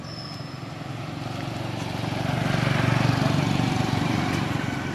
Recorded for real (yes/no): yes